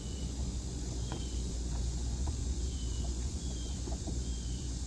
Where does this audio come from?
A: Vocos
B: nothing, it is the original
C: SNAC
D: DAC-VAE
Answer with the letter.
A